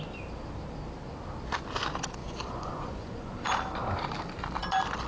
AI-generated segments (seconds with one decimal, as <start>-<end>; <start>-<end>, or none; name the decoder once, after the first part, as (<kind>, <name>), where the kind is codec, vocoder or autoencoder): 2.2-3.3 (vocoder, Vocos)